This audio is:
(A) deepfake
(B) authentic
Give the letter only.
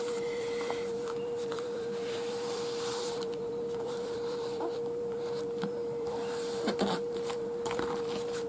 A